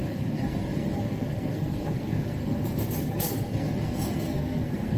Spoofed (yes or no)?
yes